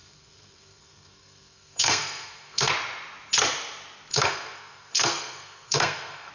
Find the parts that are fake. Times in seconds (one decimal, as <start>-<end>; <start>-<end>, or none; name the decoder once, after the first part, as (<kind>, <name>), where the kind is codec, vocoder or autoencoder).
0.0-2.7 (codec, SNAC); 4.1-6.3